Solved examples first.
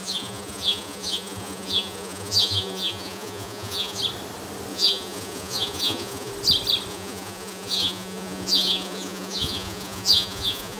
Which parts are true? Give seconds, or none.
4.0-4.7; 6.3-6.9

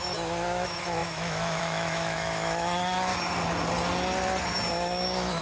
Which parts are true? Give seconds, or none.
3.1-4.7

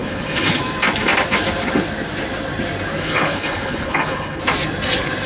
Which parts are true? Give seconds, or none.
0.6-3.0; 4.4-5.3

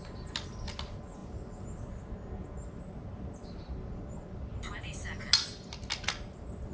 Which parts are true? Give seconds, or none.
0.0-6.7

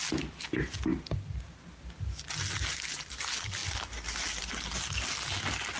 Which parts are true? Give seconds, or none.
0.0-5.8